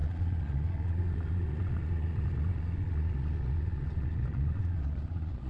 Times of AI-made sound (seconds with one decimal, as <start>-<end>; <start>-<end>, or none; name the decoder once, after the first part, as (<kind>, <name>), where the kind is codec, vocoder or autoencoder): 0.0-5.5 (vocoder, Vocos)